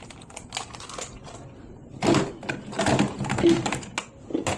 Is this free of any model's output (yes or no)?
yes